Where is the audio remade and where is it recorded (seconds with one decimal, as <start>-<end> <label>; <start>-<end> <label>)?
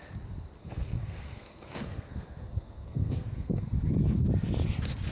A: 0.0-0.6 recorded; 0.6-3.7 remade; 3.7-5.1 recorded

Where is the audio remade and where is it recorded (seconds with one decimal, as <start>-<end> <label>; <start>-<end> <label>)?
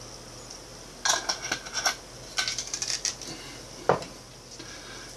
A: 0.0-5.2 recorded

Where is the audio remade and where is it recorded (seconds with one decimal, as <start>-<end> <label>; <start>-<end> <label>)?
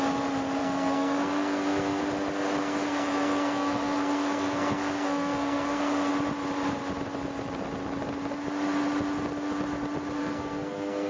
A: 0.0-0.6 recorded; 0.6-2.0 remade; 2.0-2.6 recorded; 2.6-6.1 remade; 6.1-10.2 recorded; 10.2-11.1 remade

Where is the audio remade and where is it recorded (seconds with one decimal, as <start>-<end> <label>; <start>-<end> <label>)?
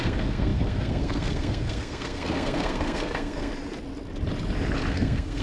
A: 0.0-3.5 remade; 3.5-4.9 recorded; 4.9-5.4 remade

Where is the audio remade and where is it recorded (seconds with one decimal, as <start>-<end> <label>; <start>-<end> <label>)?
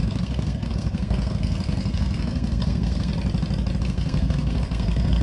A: 0.0-3.1 remade; 3.1-3.8 recorded; 3.8-5.2 remade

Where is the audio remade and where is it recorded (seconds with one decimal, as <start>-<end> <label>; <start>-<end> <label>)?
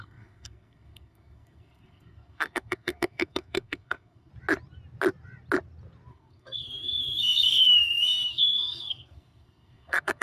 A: 0.0-4.3 remade; 4.3-6.1 recorded; 6.1-10.2 remade